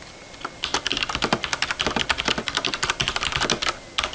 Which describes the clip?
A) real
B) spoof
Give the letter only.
A